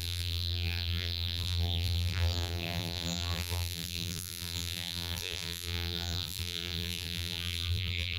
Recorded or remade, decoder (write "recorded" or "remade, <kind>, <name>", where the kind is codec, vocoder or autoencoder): remade, vocoder, BigVGAN v2